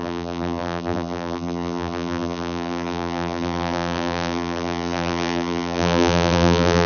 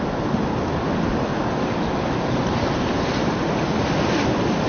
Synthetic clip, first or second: first